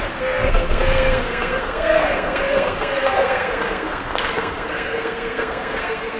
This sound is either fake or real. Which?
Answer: fake